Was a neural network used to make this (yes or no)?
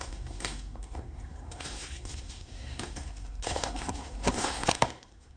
yes